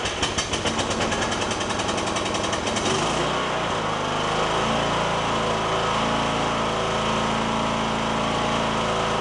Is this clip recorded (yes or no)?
yes